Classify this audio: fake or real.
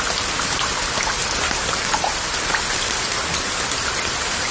real